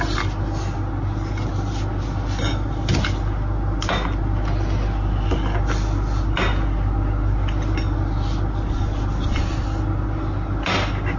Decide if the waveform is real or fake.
real